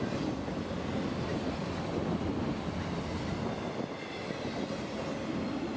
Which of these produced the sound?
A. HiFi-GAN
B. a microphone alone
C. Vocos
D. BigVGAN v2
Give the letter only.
B